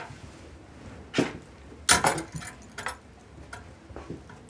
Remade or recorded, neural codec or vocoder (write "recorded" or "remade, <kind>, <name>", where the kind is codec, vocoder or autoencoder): recorded